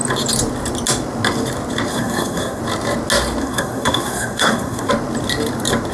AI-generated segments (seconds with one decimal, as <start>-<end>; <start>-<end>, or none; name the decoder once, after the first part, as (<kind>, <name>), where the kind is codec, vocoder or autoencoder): 1.9-2.6 (codec, SNAC); 3.4-4.9